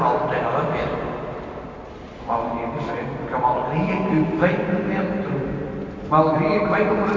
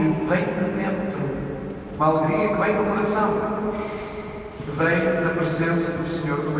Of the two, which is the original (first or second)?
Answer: second